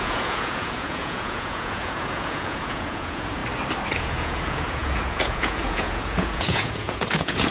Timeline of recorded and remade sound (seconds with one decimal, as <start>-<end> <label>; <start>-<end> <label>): 0.0-3.4 remade; 3.4-3.9 recorded; 3.9-7.5 remade